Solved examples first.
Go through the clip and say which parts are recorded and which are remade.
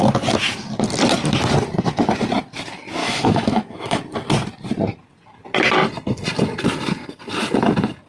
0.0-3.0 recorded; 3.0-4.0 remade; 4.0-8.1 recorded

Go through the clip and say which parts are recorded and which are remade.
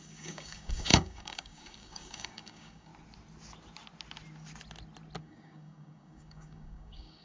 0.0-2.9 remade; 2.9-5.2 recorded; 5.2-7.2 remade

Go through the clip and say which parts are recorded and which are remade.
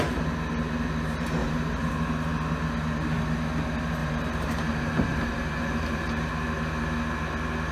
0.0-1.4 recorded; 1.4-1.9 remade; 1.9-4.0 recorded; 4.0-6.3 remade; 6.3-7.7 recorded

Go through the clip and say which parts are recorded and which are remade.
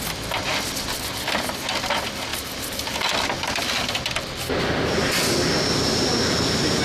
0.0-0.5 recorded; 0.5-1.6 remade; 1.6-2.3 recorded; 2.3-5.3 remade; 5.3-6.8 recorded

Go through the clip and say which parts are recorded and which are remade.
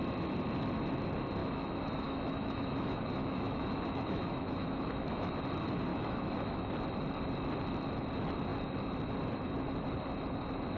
0.0-1.4 recorded; 1.4-5.4 remade; 5.4-5.9 recorded; 5.9-6.7 remade; 6.7-10.8 recorded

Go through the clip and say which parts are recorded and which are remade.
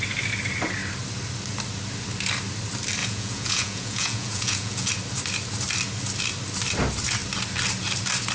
0.0-3.0 recorded; 3.0-4.9 remade; 4.9-8.3 recorded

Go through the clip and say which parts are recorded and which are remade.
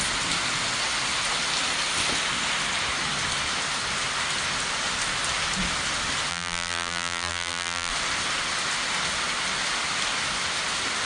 0.0-6.3 recorded; 6.3-7.9 remade; 7.9-11.1 recorded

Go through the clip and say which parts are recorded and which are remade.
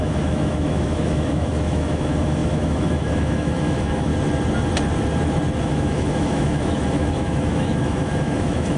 0.0-4.1 remade; 4.1-5.6 recorded; 5.6-8.8 remade